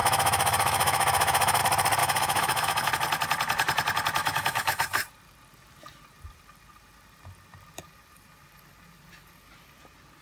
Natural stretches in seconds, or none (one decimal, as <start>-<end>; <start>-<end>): 1.6-2.0; 2.9-4.2; 4.8-10.2